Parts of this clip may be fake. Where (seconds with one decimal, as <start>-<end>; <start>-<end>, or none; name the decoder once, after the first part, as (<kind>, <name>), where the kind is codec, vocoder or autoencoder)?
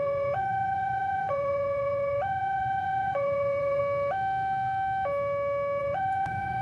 0.0-3.8 (vocoder, Vocos); 5.8-6.6